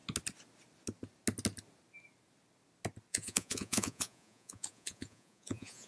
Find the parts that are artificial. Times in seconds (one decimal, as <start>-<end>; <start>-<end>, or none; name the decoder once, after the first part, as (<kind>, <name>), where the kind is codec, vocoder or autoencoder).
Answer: 3.1-5.9 (vocoder, Vocos)

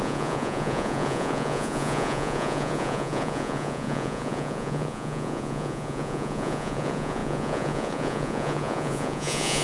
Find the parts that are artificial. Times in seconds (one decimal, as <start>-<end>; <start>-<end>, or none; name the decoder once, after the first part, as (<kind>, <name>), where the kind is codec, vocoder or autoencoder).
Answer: 0.0-9.6 (vocoder, Vocos)